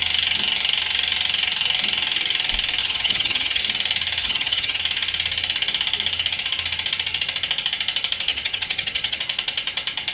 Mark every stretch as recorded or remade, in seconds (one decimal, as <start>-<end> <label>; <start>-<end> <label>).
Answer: 0.0-2.8 recorded; 2.8-3.6 remade; 3.6-4.2 recorded; 4.2-4.8 remade; 4.8-8.3 recorded; 8.3-9.2 remade; 9.2-10.1 recorded